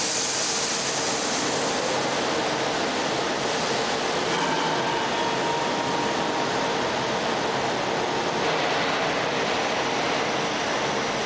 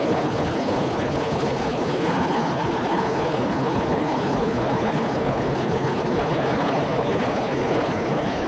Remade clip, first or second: second